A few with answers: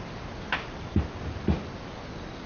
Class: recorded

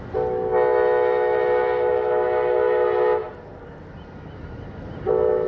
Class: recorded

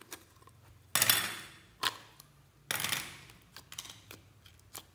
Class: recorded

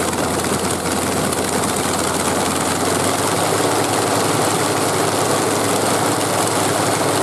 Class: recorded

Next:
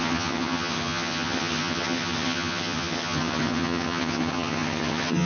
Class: remade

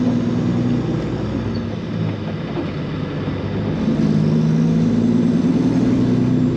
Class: recorded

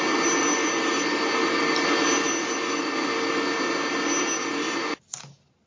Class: recorded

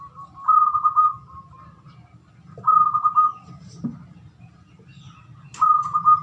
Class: recorded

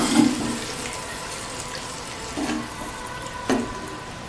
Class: recorded